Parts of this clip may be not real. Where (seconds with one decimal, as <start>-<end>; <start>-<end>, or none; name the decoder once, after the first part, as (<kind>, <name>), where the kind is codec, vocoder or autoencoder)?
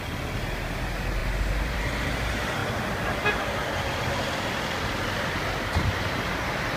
1.2-1.8 (vocoder, BigVGAN v2); 2.6-5.3